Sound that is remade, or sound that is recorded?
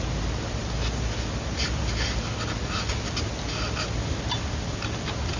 recorded